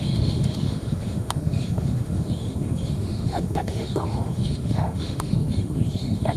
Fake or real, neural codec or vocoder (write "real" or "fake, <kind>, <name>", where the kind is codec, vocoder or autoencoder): fake, autoencoder, DAC-VAE